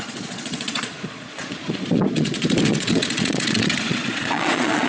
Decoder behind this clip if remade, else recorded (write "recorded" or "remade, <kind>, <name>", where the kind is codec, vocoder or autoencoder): remade, vocoder, Vocos